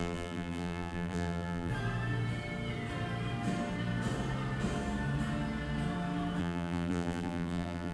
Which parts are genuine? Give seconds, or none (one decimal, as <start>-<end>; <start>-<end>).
1.7-6.4